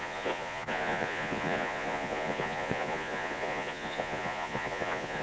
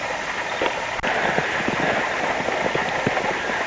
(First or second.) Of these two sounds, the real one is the second